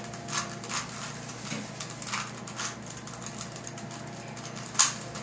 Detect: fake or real real